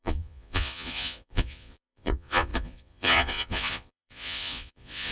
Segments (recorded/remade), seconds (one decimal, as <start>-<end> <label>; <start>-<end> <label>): 0.0-5.1 remade